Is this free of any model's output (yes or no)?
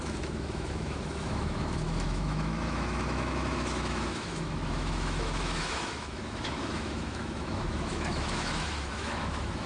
no